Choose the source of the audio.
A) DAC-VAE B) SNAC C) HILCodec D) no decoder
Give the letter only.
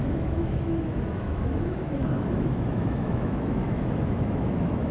A